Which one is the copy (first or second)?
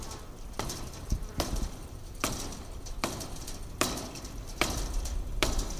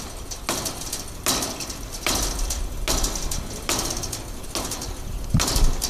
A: first